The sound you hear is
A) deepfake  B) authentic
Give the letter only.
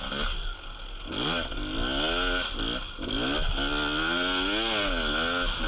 B